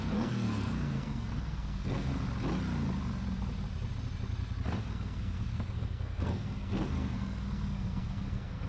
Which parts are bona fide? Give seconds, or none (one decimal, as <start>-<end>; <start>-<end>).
2.1-4.8